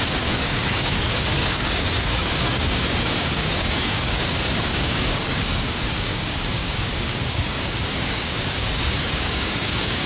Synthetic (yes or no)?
yes